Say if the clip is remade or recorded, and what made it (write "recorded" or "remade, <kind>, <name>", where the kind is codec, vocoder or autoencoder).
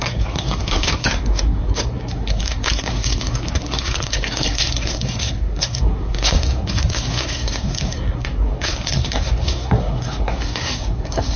remade, codec, SNAC